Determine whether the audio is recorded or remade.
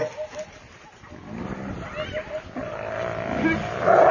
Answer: recorded